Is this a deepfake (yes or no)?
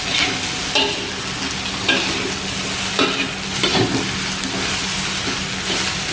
no